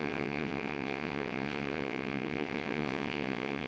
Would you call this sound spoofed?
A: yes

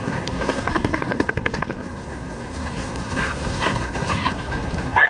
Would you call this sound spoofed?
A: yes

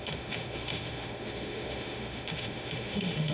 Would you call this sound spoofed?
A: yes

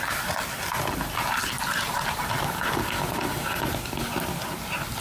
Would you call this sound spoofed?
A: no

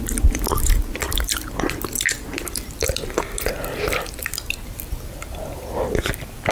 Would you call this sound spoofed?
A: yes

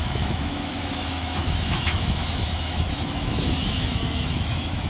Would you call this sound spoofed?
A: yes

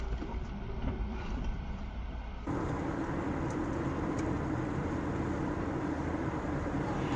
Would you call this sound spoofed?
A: yes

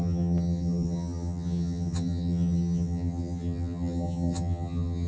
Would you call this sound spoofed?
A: yes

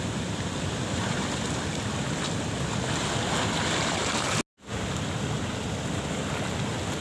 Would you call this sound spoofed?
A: no